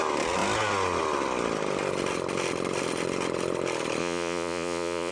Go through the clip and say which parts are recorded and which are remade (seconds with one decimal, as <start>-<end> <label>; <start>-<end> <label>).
0.0-4.0 recorded; 4.0-5.1 remade